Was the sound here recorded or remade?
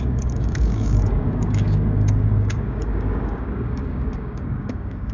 remade